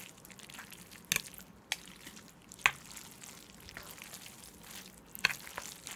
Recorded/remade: recorded